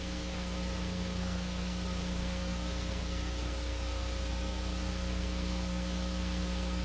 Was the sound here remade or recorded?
remade